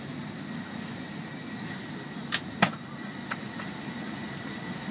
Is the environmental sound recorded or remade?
recorded